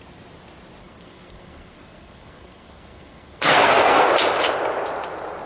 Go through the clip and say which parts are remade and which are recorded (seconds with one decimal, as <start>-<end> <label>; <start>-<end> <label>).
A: 0.0-0.8 recorded; 0.8-4.1 remade; 4.1-5.5 recorded